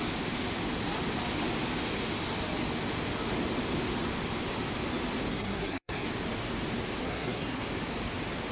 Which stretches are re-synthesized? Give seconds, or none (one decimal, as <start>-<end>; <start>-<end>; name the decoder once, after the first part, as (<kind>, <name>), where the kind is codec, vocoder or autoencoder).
5.3-6.1 (codec, SNAC); 7.0-7.6